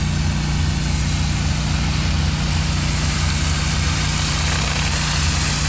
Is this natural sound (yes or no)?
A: yes